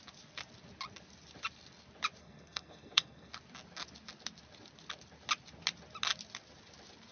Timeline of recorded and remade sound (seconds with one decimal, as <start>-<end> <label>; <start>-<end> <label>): 0.0-2.2 recorded; 2.2-3.3 remade; 3.3-7.1 recorded